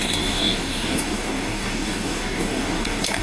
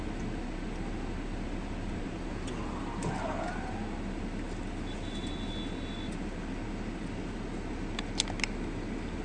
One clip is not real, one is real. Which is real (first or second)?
second